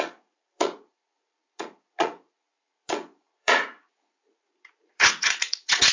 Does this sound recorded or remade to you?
remade